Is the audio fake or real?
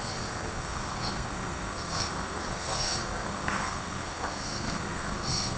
fake